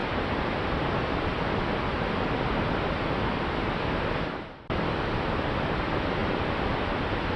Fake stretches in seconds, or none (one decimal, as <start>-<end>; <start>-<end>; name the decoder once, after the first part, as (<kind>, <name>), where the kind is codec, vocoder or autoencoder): 0.0-1.5 (vocoder, BigVGAN v2); 6.2-6.9